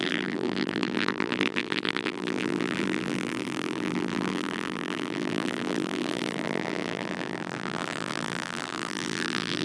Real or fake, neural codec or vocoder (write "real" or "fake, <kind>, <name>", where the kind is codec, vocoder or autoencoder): fake, vocoder, BigVGAN v2